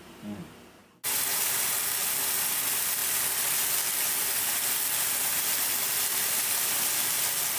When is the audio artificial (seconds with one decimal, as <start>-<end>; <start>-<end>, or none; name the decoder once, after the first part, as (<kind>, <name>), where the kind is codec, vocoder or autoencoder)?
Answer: none